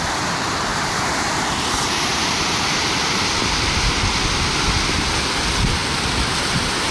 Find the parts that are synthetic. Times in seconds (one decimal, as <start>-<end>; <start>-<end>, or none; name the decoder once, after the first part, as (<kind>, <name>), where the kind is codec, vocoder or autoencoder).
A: 0.7-4.0 (vocoder, BigVGAN v2)